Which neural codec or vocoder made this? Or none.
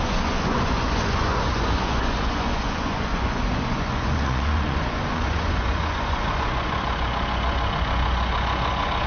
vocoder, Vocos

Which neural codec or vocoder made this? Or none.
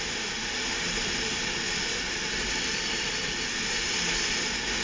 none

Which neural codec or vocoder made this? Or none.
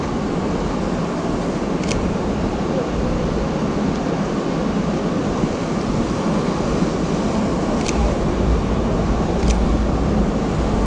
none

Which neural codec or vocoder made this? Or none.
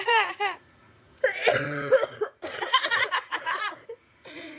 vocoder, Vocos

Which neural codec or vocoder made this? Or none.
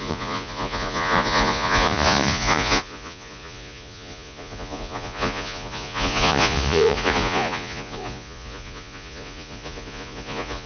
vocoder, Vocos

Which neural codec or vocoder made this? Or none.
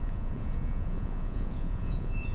vocoder, Vocos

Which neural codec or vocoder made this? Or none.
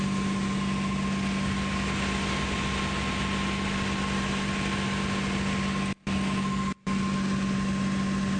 none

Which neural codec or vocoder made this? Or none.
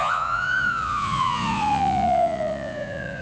vocoder, Vocos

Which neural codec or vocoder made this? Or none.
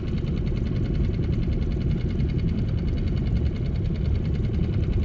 none